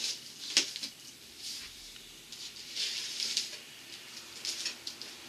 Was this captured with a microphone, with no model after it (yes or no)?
yes